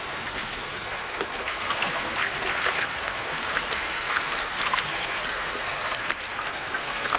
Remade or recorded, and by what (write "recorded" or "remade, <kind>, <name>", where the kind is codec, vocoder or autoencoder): remade, codec, SNAC